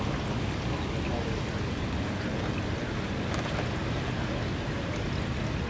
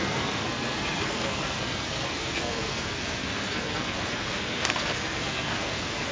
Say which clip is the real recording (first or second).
first